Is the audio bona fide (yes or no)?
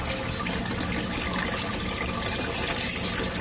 yes